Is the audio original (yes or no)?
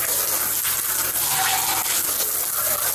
yes